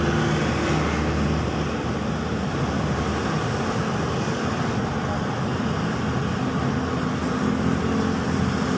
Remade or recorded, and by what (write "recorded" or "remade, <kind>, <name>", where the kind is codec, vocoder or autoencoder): recorded